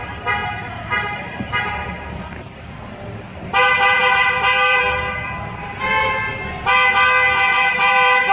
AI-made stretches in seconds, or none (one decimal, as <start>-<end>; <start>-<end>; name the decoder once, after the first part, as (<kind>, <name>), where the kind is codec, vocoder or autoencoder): 0.0-6.3 (vocoder, BigVGAN v2); 7.7-8.3